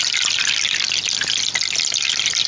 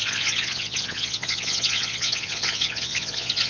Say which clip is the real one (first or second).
first